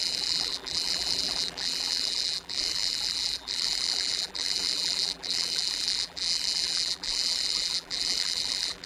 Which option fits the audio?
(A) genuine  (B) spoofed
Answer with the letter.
B